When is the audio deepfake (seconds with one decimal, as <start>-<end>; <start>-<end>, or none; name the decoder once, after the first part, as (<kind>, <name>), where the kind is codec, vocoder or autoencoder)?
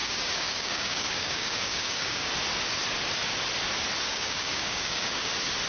0.0-2.3 (codec, DAC); 4.1-5.3